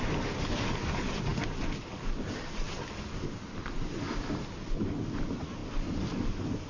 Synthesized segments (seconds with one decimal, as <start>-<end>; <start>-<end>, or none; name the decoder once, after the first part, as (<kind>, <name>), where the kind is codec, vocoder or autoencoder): none

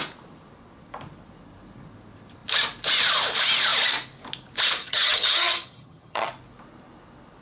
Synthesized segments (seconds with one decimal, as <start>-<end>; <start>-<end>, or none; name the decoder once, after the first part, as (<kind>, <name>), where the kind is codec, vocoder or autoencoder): 4.8-6.3 (vocoder, HiFi-GAN)

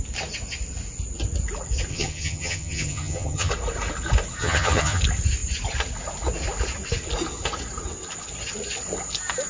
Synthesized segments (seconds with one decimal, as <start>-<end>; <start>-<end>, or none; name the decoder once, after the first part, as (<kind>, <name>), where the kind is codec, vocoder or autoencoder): 1.9-3.5 (vocoder, HiFi-GAN); 4.4-5.0

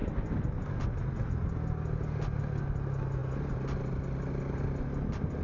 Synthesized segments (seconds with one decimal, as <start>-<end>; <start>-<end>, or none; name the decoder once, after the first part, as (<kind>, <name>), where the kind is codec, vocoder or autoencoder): none

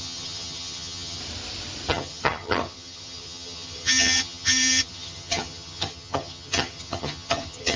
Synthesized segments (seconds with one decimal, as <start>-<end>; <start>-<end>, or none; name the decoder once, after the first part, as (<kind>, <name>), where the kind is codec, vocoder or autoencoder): 0.0-1.2 (vocoder, HiFi-GAN); 1.9-7.8